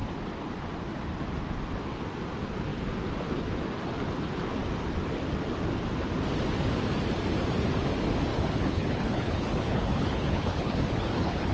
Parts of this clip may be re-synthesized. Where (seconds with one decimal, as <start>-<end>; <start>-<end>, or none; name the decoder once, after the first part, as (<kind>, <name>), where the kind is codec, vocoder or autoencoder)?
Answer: 8.3-11.5 (codec, HILCodec)